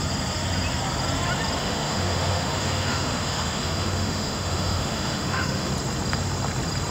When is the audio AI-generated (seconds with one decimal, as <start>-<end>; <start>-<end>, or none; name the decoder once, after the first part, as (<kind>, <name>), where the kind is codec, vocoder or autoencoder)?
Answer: 1.6-5.7 (autoencoder, DAC-VAE)